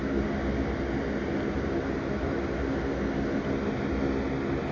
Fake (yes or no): no